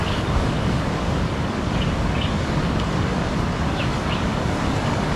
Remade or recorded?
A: remade